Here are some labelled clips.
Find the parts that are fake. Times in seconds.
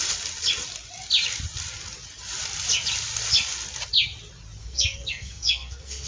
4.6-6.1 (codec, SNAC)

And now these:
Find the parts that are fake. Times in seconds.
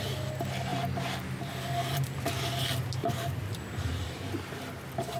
3.0-4.3 (vocoder, BigVGAN v2)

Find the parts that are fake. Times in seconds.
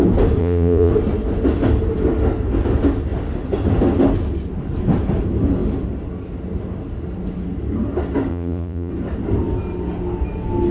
0.4-0.9 (vocoder, Vocos); 8.3-8.9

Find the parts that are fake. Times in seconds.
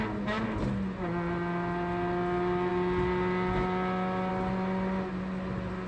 none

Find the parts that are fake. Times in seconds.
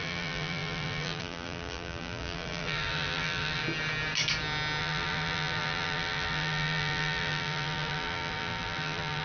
0.0-3.6 (vocoder, BigVGAN v2); 4.8-9.2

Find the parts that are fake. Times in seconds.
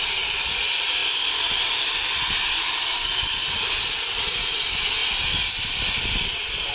none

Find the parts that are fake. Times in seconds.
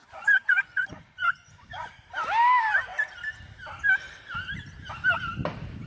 0.0-1.9 (vocoder, Vocos)